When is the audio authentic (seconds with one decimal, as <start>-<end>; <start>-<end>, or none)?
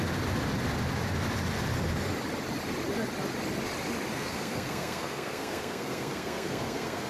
0.0-4.1